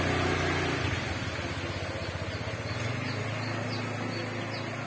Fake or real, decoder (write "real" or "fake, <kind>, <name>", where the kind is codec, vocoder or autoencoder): real